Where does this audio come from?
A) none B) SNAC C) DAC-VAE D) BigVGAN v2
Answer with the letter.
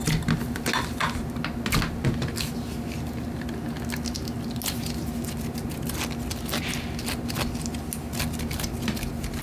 A